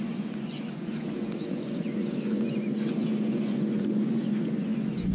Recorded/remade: remade